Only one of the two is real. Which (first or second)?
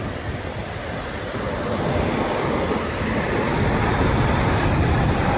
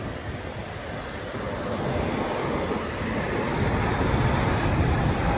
second